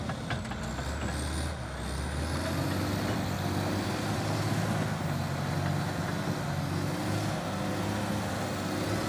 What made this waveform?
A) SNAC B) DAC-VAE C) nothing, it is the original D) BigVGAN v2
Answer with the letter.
C